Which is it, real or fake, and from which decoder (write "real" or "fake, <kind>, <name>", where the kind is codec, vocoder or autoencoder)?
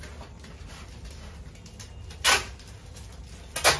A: real